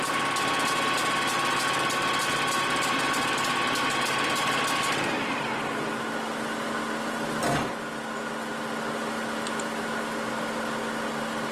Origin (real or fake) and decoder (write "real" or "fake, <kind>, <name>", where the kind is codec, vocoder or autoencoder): real